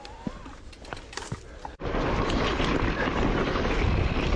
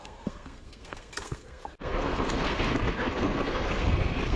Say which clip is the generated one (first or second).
second